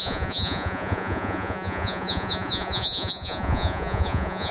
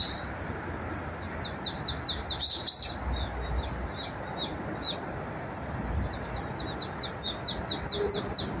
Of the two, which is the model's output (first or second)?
first